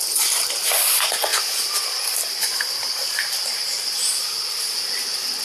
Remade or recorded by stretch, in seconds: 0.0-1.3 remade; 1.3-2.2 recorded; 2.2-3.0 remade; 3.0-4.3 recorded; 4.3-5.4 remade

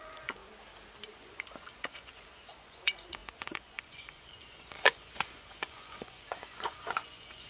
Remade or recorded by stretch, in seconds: 0.0-0.4 remade; 0.4-1.1 recorded; 1.1-7.5 remade

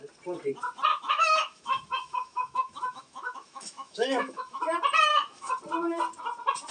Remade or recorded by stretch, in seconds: 0.0-0.9 recorded; 0.9-4.6 remade; 4.6-5.1 recorded; 5.1-5.6 remade; 5.6-6.7 recorded

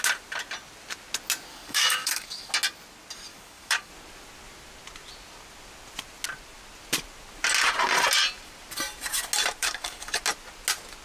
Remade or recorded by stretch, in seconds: 0.0-1.5 recorded; 1.5-2.5 remade; 2.5-3.3 recorded; 3.3-3.9 remade; 3.9-9.6 recorded; 9.6-10.2 remade; 10.2-11.0 recorded

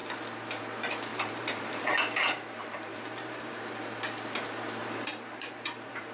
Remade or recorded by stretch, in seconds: 0.0-1.1 recorded; 1.1-3.6 remade; 3.6-4.8 recorded; 4.8-6.1 remade

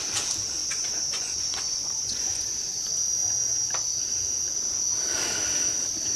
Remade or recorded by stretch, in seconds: 0.0-0.6 recorded; 0.6-2.6 remade; 2.6-6.2 recorded

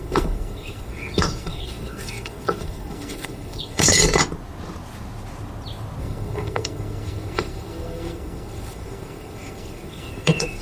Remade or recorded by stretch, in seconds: 0.0-4.2 remade; 4.2-6.0 recorded; 6.0-10.6 remade